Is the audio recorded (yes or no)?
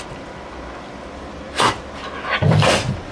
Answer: yes